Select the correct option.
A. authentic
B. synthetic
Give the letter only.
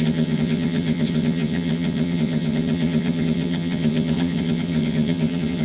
B